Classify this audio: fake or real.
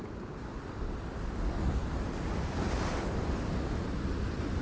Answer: real